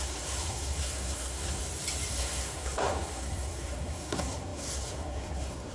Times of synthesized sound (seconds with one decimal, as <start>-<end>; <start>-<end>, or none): 0.0-1.6; 2.1-5.7